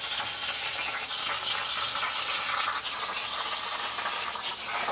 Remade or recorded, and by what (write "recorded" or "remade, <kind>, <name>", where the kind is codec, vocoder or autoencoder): recorded